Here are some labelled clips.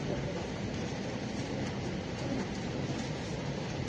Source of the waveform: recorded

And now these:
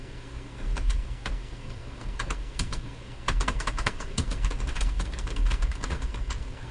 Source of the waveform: remade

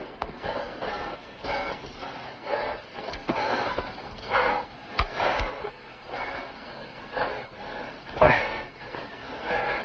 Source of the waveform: remade